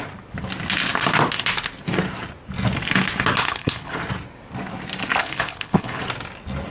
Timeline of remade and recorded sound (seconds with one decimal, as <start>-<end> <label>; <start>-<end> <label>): 0.0-3.4 recorded; 3.4-4.0 remade; 4.0-5.2 recorded; 5.2-6.0 remade; 6.0-6.7 recorded